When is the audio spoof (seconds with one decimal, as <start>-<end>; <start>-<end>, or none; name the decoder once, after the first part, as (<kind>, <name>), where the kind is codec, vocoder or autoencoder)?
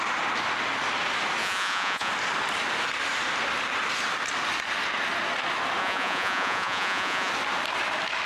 1.4-2.1 (vocoder, Vocos); 5.8-7.3